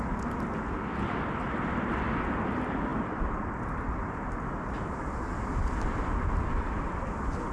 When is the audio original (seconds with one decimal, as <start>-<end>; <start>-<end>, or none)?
0.0-2.9; 3.5-7.5